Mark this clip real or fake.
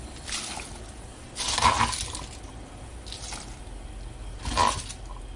real